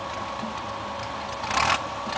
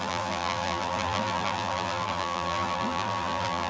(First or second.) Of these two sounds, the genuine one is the first